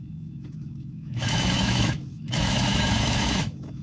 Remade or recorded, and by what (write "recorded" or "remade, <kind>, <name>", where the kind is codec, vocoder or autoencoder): remade, autoencoder, DAC-VAE